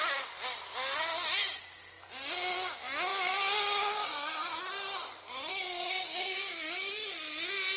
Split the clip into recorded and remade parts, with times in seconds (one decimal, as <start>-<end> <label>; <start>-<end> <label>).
0.0-3.1 recorded; 3.1-4.6 remade; 4.6-5.5 recorded; 5.5-6.9 remade; 6.9-7.8 recorded

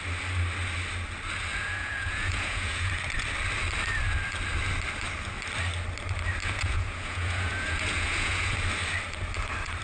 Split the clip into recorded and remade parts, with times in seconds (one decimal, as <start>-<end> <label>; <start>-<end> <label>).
0.0-1.5 recorded; 1.5-2.9 remade; 2.9-6.4 recorded; 6.4-8.5 remade; 8.5-9.8 recorded